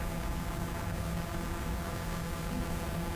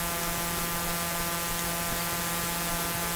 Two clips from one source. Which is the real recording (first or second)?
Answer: second